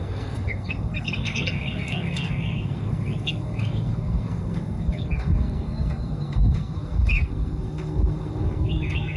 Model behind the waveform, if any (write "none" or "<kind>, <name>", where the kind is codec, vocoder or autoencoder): codec, SNAC